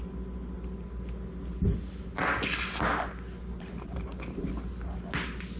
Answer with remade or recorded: recorded